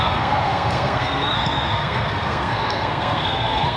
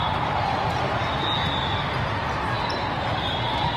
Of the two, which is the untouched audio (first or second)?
second